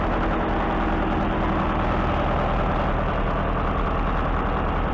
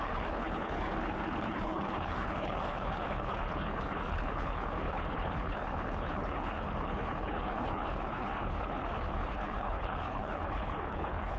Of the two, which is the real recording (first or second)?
first